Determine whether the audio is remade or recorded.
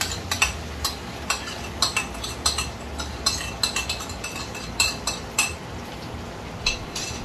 recorded